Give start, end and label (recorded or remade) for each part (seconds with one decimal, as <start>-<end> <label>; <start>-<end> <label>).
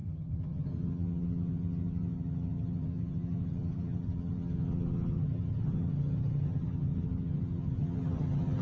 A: 0.0-8.6 remade